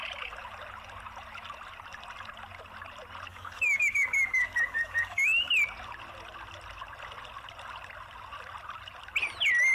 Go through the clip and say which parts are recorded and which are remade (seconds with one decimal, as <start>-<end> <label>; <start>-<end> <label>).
0.0-3.3 recorded; 3.3-5.5 remade; 5.5-9.7 recorded